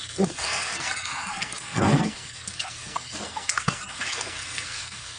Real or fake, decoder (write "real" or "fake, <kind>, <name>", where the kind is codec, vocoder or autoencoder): fake, codec, SNAC